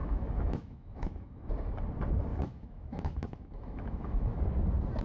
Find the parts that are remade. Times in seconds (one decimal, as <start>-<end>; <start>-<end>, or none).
0.0-1.5; 2.3-4.4